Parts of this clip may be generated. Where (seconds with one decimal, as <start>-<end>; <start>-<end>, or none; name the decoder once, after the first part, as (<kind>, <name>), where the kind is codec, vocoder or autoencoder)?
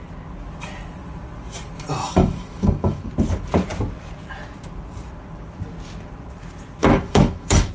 2.0-3.1 (autoencoder, DAC-VAE); 6.8-7.7